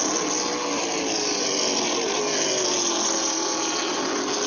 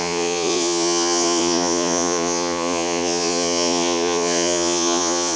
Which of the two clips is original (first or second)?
first